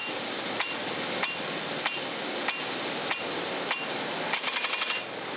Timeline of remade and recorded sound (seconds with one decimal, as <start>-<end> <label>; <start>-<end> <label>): 0.0-5.4 recorded